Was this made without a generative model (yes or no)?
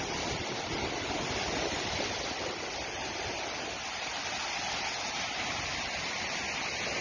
yes